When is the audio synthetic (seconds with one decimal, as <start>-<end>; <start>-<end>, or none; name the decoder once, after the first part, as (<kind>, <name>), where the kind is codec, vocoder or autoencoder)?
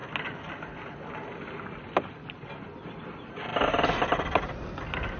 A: none